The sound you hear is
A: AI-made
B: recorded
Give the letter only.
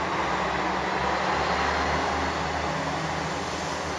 B